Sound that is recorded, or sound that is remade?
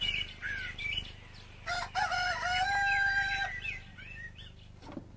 remade